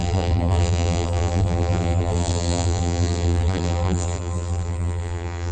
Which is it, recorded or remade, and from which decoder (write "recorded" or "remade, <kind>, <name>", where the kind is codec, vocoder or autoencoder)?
remade, vocoder, BigVGAN v2